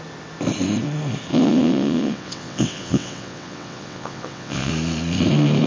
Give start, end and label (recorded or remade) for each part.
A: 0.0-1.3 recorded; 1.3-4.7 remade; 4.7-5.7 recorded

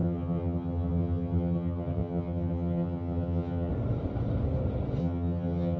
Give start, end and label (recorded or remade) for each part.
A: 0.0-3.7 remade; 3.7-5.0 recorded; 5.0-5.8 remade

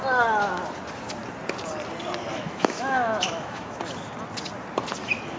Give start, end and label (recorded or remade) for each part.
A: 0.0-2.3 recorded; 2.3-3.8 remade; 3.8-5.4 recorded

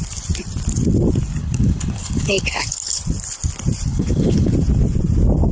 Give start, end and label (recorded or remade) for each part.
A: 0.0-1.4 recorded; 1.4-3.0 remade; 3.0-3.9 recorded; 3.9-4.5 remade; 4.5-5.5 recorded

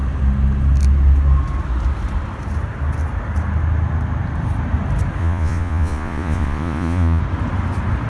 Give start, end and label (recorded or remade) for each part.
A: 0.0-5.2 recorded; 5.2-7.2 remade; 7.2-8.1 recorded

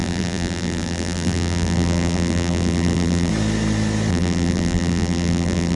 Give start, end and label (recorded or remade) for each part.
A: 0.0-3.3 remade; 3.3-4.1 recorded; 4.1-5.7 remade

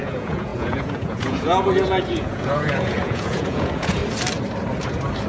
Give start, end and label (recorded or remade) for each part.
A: 0.0-4.0 remade; 4.0-5.3 recorded